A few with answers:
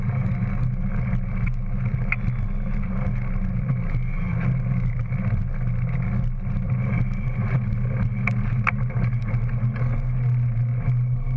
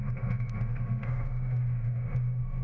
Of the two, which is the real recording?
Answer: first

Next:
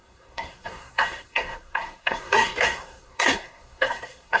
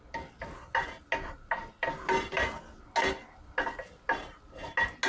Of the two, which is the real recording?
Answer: second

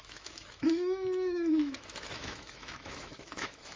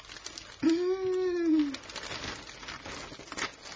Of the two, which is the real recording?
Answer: second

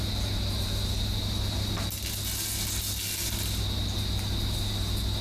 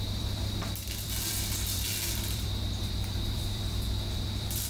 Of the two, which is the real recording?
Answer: first